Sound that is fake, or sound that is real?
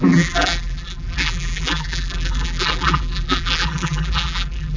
fake